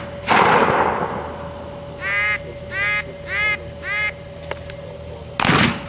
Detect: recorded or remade recorded